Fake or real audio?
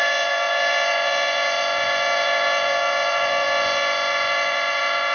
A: fake